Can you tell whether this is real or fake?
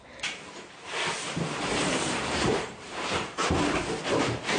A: fake